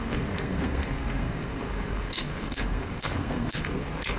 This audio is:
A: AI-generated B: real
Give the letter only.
A